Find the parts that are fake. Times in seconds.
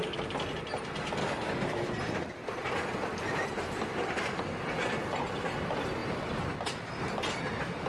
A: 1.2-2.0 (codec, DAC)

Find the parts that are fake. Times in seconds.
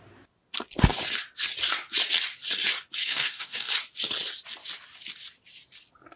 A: 3.0-3.7 (codec, DAC)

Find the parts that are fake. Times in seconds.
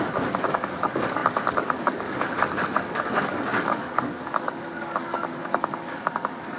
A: 0.0-6.6 (codec, DAC)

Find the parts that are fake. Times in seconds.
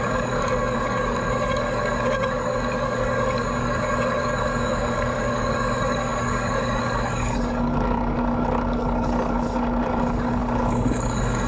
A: 0.0-11.5 (codec, DAC)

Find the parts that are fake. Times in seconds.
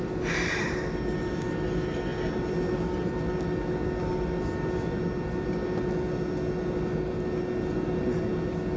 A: none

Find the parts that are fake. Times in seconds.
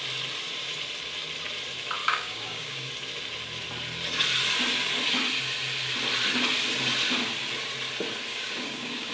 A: 2.0-2.9 (codec, DAC); 8.3-9.1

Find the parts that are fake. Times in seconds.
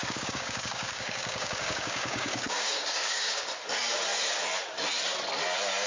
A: 0.0-3.5 (codec, DAC)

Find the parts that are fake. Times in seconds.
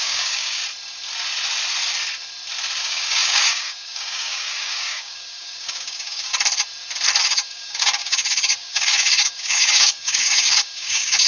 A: 0.0-0.6 (codec, DAC); 2.8-6.3; 7.2-11.3